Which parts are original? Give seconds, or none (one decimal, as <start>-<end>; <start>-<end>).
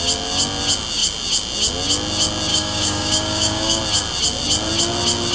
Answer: 0.0-2.5; 3.8-5.3